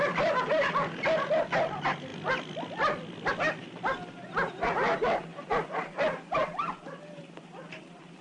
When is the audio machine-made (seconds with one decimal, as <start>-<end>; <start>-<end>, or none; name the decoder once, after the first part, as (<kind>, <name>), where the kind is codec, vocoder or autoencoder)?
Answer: none